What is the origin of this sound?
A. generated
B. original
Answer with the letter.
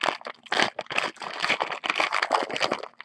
B